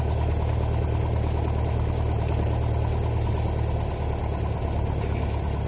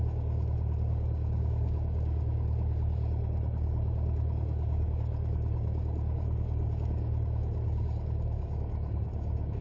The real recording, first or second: first